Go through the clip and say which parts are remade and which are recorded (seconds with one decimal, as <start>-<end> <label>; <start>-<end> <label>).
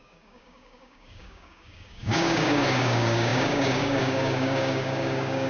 0.0-5.5 remade